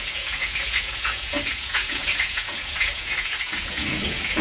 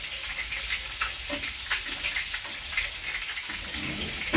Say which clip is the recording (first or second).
second